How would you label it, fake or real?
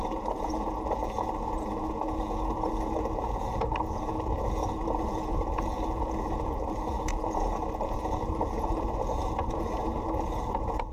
fake